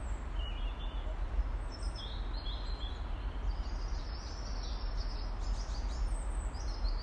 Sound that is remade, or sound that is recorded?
recorded